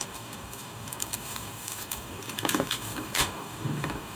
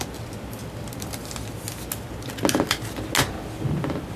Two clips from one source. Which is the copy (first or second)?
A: first